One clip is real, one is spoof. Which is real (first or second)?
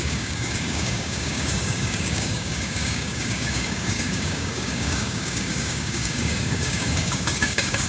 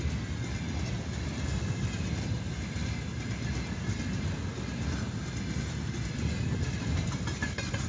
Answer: second